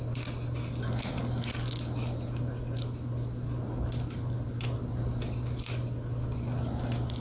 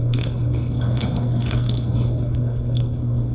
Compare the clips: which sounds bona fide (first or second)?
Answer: first